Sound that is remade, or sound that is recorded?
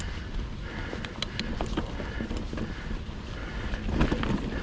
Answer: recorded